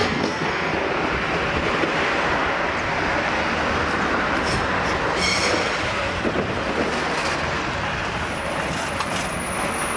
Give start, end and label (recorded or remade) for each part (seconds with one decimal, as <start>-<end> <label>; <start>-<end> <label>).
0.0-0.7 remade; 0.7-10.0 recorded